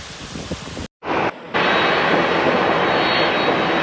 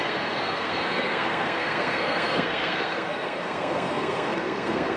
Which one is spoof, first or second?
second